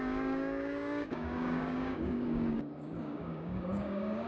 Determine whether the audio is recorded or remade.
remade